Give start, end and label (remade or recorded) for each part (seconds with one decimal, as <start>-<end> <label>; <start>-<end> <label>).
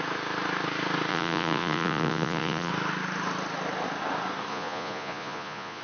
0.0-1.1 recorded; 1.1-2.7 remade; 2.7-4.5 recorded; 4.5-5.8 remade